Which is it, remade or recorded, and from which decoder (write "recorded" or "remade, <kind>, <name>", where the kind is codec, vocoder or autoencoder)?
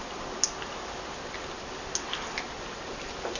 recorded